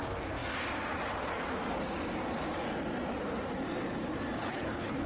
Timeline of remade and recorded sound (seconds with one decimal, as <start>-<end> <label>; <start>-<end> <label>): 0.0-4.4 recorded; 4.4-5.1 remade